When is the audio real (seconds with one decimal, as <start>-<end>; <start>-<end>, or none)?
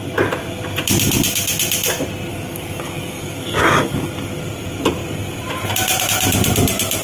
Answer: 0.0-2.3; 4.1-7.0